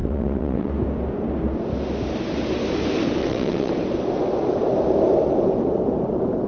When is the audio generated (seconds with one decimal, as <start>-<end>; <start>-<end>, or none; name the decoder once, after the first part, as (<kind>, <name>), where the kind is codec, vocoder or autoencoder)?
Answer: 0.0-0.7 (vocoder, WaveNeXt); 3.2-3.7